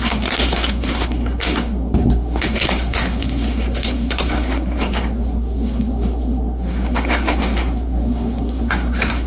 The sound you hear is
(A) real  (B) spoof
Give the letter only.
B